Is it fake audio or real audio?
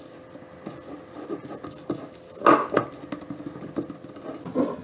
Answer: real